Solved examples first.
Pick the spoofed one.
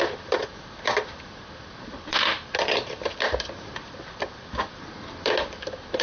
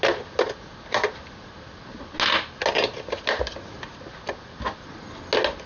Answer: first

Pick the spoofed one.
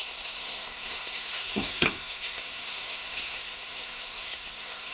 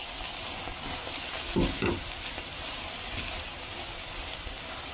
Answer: first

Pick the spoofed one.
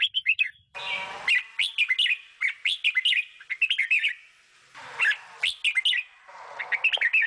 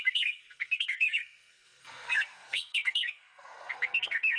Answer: second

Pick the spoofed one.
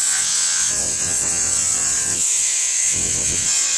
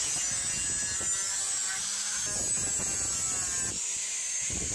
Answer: first